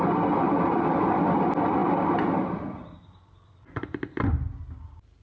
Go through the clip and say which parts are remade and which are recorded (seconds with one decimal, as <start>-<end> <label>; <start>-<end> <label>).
0.0-1.8 recorded; 1.8-4.3 remade; 4.3-5.2 recorded